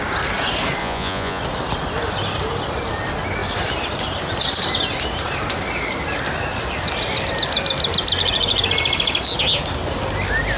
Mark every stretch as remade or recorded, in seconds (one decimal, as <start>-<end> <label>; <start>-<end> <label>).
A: 0.0-0.8 recorded; 0.8-1.4 remade; 1.4-10.6 recorded